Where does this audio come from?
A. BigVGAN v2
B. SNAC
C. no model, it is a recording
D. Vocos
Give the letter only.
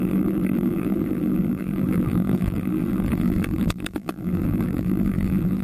A